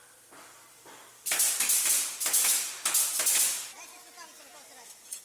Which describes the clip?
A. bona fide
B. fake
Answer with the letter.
A